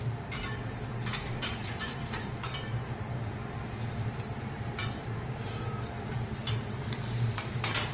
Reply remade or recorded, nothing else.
remade